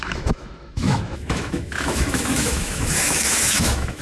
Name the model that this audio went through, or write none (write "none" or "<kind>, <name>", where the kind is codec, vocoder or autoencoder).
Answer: autoencoder, DAC-VAE